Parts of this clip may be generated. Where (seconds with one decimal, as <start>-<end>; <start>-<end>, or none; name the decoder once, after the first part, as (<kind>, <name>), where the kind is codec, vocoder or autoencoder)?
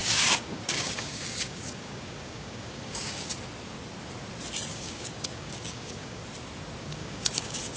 0.0-3.3 (codec, DAC); 4.7-6.2; 6.8-7.8